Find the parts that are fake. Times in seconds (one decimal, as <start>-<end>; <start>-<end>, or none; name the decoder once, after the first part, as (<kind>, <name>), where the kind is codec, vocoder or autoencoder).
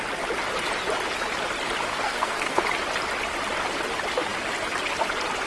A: 1.9-2.6 (codec, SNAC)